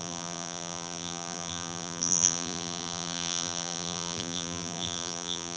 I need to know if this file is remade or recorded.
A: remade